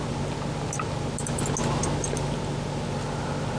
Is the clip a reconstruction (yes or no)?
no